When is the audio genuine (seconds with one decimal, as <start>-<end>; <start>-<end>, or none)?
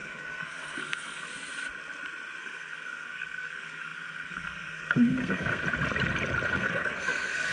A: 1.3-2.4; 5.6-6.5